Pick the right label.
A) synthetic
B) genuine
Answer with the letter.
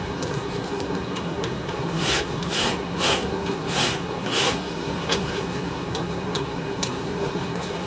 A